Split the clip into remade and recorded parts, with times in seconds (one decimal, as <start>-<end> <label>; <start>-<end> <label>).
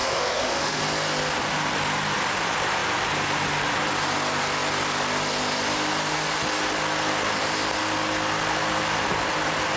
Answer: 0.0-0.8 remade; 0.8-9.8 recorded